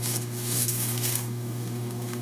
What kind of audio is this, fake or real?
fake